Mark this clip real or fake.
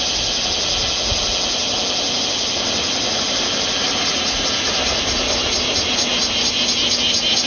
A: real